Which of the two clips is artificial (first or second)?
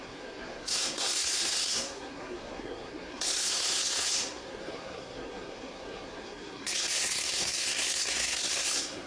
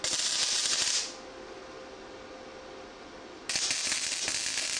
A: first